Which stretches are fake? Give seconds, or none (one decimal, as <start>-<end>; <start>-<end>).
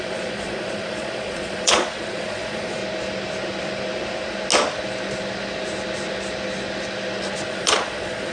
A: 0.0-2.8; 7.5-8.3